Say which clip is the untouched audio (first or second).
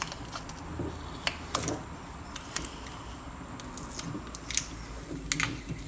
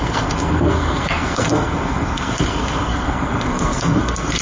first